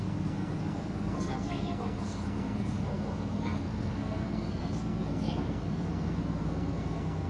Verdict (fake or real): fake